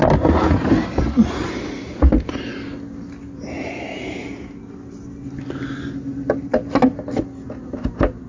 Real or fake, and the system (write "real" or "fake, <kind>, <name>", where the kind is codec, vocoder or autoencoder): real